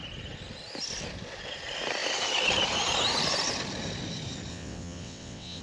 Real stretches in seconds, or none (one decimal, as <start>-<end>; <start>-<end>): 0.0-4.5